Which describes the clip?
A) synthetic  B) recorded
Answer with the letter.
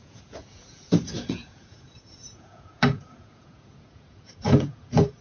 A